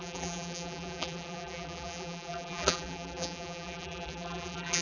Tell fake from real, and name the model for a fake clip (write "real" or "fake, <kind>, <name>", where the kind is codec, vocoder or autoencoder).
fake, vocoder, BigVGAN v2